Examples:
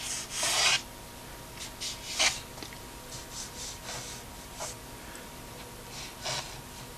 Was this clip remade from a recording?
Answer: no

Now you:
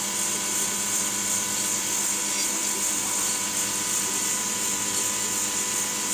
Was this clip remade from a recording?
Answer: no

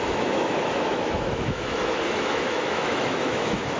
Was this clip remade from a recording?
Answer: yes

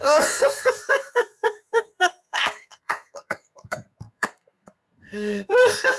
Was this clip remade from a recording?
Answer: yes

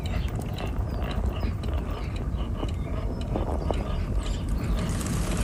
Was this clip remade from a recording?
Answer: yes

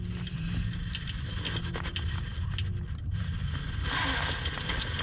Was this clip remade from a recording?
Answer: no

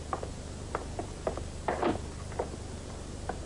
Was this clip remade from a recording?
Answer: no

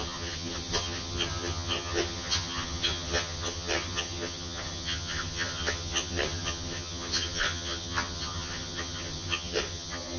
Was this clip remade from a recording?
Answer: yes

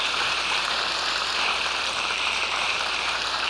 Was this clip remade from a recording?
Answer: yes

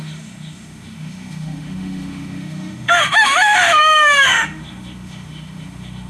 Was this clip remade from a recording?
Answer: yes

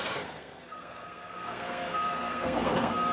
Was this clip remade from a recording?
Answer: yes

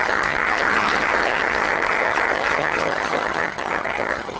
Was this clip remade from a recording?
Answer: yes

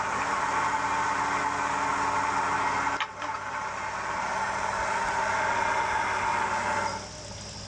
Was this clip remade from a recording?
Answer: no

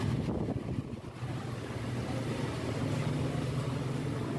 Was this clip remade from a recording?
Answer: no